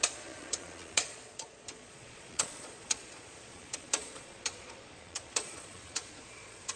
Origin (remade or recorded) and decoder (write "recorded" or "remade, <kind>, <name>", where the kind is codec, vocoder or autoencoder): remade, vocoder, Vocos